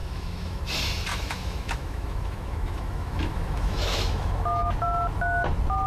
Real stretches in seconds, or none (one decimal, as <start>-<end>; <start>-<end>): 0.6-1.1; 4.6-5.9

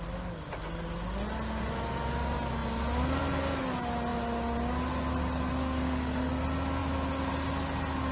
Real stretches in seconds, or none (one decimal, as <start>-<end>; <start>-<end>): 0.0-5.5; 6.3-8.1

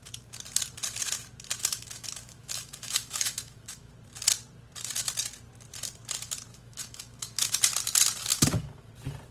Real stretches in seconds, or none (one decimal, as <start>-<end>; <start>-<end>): 0.0-1.6; 3.9-6.5; 7.6-8.3; 8.9-9.3